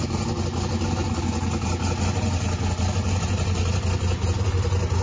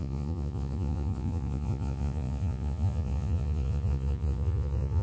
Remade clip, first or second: second